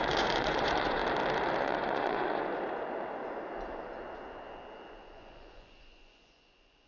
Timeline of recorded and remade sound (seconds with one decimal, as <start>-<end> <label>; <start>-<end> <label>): 0.0-1.0 remade; 1.0-1.6 recorded; 1.6-2.5 remade; 2.5-4.9 recorded; 4.9-6.9 remade